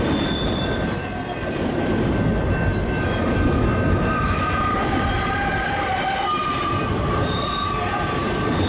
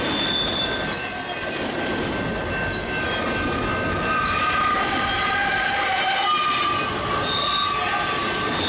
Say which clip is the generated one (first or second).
first